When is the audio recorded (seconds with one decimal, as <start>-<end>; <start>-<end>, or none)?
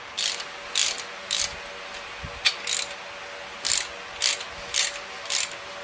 0.0-5.8